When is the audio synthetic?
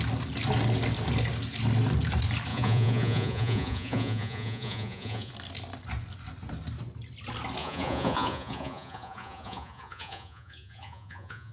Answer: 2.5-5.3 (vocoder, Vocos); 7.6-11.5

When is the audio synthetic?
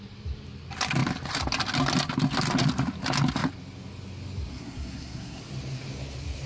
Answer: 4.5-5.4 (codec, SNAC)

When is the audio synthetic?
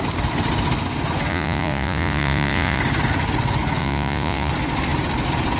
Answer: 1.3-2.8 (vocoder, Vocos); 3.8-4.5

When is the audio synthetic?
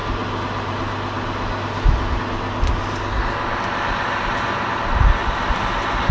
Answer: none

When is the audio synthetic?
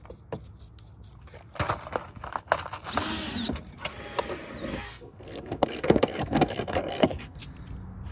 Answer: 4.7-7.4 (codec, SNAC)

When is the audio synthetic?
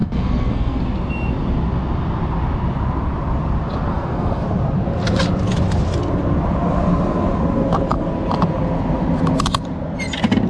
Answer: 0.0-0.8 (codec, SNAC); 3.9-4.4